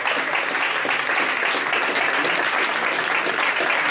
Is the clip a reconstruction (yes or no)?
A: no